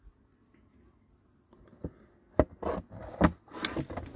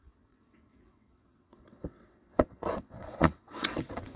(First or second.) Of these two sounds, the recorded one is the first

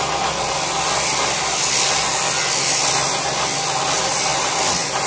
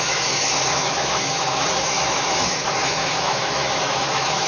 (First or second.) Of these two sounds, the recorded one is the first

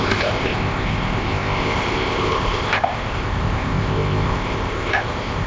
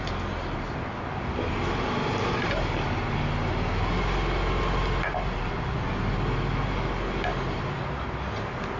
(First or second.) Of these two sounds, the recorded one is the second